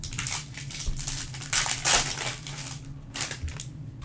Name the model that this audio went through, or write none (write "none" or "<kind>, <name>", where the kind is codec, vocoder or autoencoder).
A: none